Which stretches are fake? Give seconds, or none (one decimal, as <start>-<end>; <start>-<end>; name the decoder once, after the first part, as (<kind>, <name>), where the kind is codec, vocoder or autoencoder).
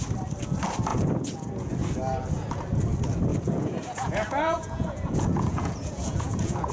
0.9-1.7 (vocoder, Vocos); 3.3-6.7